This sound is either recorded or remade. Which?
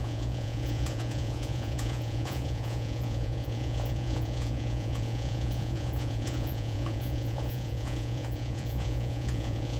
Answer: remade